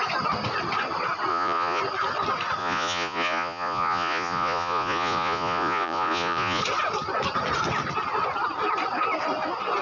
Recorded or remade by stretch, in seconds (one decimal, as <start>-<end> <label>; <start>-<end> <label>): 0.0-1.3 recorded; 1.3-1.8 remade; 1.8-2.6 recorded; 2.6-6.6 remade; 6.6-9.8 recorded